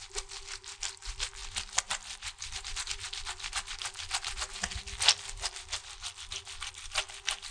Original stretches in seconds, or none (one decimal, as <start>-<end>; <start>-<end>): 0.0-5.8; 6.7-7.5